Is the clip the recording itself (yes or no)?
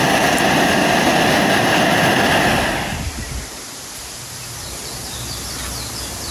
yes